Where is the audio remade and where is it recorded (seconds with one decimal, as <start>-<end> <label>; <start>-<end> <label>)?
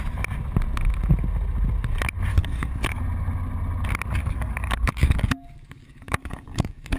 0.0-2.3 recorded; 2.3-3.0 remade; 3.0-4.2 recorded; 4.2-7.0 remade